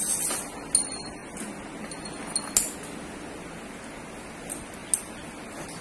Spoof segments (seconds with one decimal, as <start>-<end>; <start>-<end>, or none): none